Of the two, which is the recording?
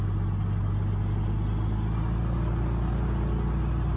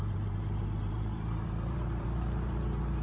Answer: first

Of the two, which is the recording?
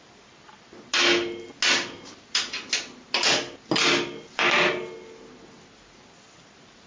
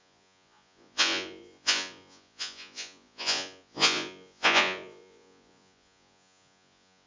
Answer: first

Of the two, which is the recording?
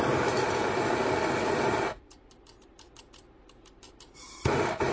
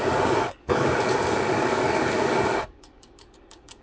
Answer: first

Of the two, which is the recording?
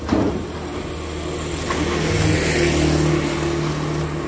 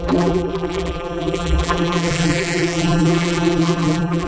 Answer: first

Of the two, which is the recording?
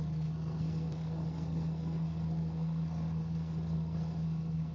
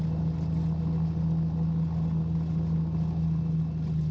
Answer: second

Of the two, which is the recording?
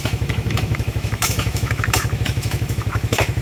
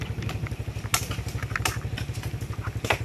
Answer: second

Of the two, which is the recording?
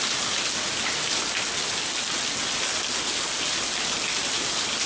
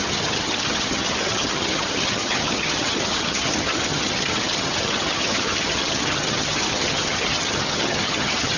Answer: first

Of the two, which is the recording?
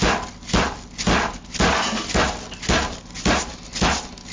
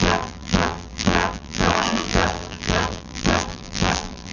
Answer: first